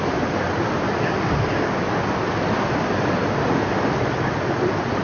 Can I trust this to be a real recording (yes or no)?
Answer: yes